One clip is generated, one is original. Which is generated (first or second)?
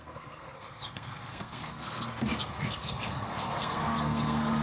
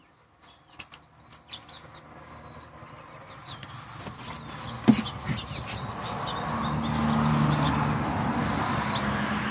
first